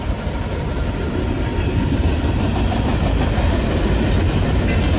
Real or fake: real